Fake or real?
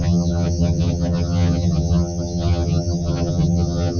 fake